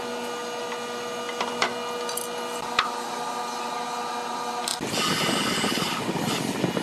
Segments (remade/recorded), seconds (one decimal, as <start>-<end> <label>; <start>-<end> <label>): 0.0-6.8 recorded